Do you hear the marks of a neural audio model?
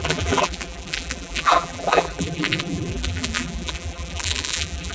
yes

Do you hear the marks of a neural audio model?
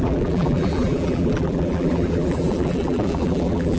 yes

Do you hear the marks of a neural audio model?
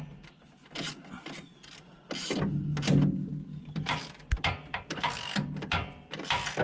no